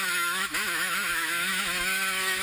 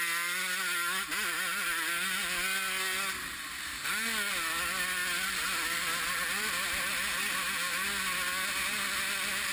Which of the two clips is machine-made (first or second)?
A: first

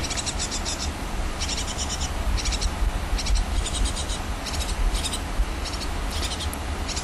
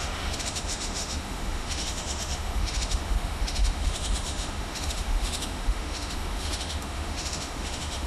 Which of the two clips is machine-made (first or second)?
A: second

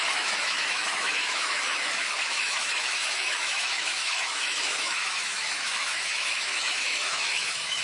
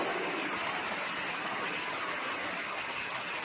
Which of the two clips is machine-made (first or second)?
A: first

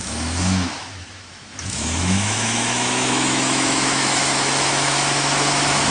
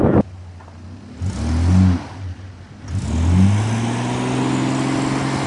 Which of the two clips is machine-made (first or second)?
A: first